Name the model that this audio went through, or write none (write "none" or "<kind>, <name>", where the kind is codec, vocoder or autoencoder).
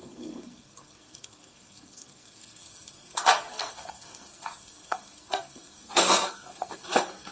codec, SNAC